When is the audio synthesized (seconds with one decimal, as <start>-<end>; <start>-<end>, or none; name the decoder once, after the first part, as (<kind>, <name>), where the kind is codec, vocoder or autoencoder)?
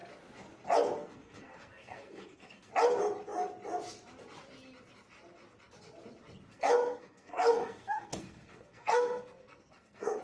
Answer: 1.0-2.7 (codec, SNAC); 6.5-10.2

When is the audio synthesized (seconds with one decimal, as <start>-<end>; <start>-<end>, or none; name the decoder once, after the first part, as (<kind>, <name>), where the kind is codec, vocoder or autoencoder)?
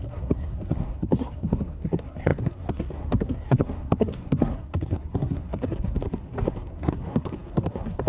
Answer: 0.0-8.1 (codec, SNAC)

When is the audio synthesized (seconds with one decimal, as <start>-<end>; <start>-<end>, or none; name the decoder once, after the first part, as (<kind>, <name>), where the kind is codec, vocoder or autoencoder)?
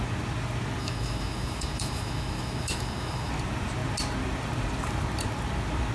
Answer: 0.8-3.3 (autoencoder, DAC-VAE)